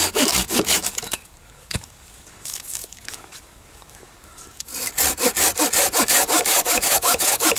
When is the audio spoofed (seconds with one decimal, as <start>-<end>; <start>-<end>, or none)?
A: 0.0-4.7; 6.0-7.6